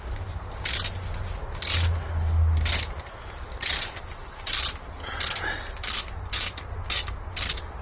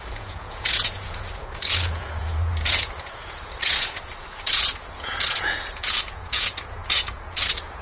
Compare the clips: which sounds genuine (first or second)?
first